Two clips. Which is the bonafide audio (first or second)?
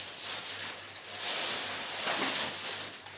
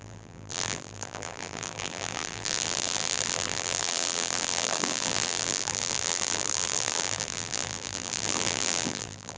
first